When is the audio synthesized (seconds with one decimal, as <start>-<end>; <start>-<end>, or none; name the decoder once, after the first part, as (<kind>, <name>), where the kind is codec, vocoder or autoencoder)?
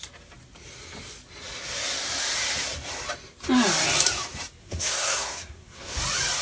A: 4.6-6.0 (codec, SNAC)